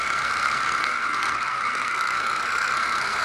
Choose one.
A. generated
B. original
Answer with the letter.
A